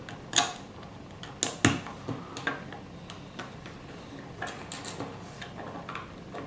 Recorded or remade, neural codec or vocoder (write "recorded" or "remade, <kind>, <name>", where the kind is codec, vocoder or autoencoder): recorded